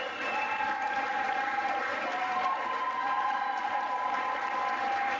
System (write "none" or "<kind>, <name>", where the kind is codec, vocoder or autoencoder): none